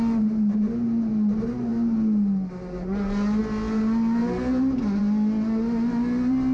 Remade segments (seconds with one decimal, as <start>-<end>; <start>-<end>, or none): none